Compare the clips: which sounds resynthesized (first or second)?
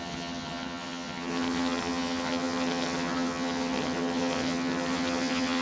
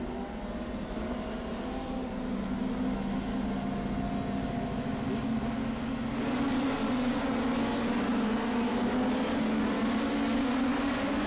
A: first